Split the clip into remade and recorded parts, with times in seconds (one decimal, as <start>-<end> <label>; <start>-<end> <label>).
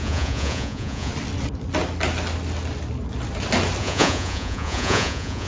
0.0-1.1 remade; 1.1-3.8 recorded; 3.8-5.5 remade